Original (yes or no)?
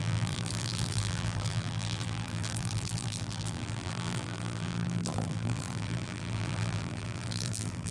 no